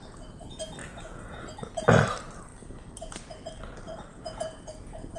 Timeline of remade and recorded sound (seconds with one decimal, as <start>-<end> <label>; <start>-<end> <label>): 0.0-0.8 recorded; 0.8-1.4 remade; 1.4-4.1 recorded; 4.1-5.2 remade